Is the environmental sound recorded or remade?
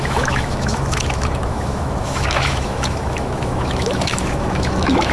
remade